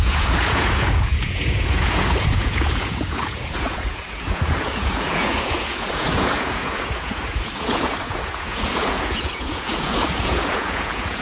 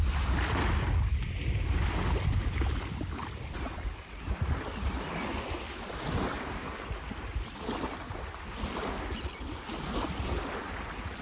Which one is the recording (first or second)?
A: second